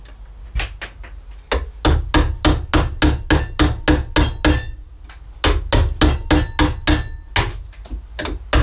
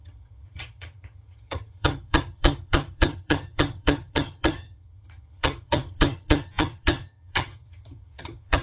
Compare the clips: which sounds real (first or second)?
first